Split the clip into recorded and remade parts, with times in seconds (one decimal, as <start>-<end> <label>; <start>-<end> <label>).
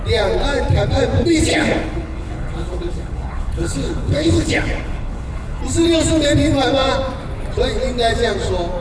0.0-1.5 recorded; 1.5-5.6 remade; 5.6-8.8 recorded